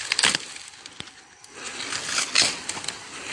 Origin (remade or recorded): recorded